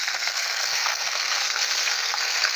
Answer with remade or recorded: remade